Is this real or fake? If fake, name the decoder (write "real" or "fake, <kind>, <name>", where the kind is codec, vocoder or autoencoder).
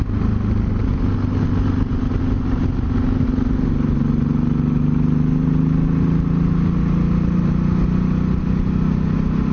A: real